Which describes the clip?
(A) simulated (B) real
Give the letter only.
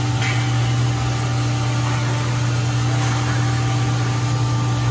B